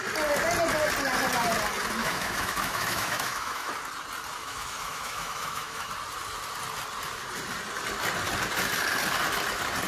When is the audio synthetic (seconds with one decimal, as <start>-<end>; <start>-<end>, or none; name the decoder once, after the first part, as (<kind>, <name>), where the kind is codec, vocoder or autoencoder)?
2.0-3.7 (autoencoder, DAC-VAE); 4.4-5.9